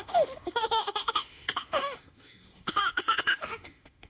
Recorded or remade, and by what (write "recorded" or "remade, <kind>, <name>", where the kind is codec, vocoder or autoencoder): remade, autoencoder, DAC-VAE